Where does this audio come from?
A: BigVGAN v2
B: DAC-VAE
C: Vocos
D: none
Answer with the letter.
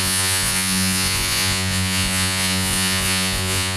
C